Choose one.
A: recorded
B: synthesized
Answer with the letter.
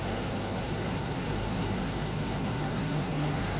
B